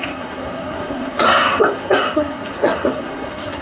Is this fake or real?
fake